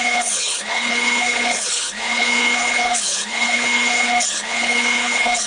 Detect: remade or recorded remade